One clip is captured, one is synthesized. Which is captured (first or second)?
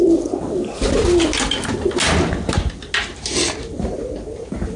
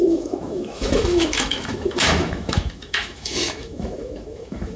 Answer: first